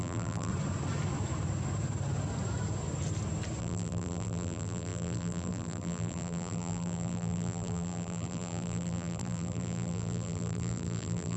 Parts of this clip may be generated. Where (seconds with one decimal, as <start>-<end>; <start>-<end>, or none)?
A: 0.0-0.5; 3.6-11.4